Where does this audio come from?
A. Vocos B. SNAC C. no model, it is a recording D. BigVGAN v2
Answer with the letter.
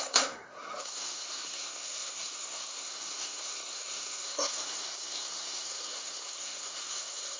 B